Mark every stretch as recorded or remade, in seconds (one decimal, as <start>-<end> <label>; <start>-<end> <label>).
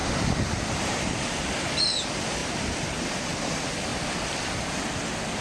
0.0-1.2 remade; 1.2-2.4 recorded; 2.4-3.5 remade; 3.5-5.4 recorded